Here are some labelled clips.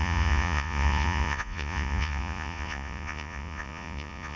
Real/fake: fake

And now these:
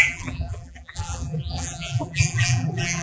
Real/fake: fake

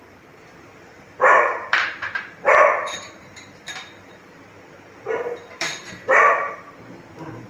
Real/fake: fake